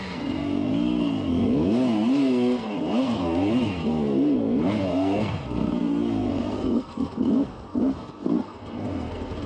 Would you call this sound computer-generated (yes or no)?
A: yes